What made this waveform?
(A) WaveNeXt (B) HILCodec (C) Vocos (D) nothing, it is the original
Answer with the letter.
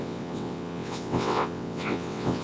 A